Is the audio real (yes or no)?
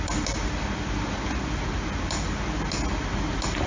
yes